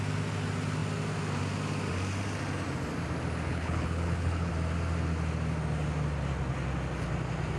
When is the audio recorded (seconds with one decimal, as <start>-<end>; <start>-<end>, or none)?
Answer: 0.0-3.5; 4.5-7.6